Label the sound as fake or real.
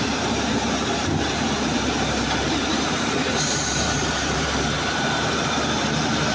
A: fake